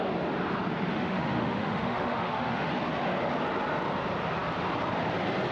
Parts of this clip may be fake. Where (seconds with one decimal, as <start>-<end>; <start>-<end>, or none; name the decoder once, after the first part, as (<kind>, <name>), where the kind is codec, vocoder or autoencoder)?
0.9-2.7 (autoencoder, DAC-VAE)